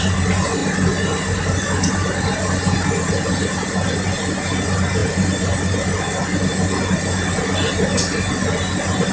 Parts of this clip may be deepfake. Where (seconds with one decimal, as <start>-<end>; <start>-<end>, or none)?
none